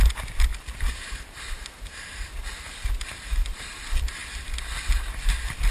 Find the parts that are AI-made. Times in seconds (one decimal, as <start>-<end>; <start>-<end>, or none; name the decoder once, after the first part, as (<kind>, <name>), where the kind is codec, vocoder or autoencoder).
0.5-2.9 (vocoder, BigVGAN v2); 3.3-3.8